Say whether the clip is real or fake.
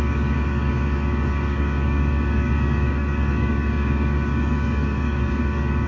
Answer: fake